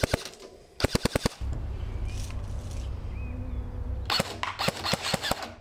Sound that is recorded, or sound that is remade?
recorded